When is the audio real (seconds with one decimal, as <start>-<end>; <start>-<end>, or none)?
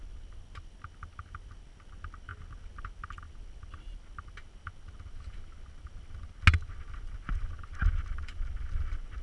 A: 0.0-9.2